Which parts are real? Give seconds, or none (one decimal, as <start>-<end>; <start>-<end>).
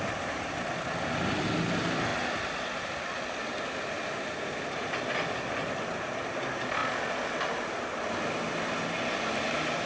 0.0-9.9